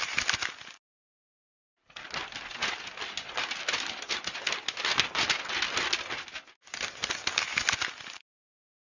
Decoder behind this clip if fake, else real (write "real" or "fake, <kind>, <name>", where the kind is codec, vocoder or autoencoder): real